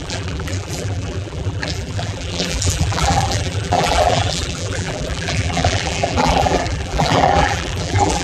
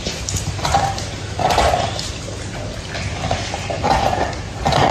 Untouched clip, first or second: second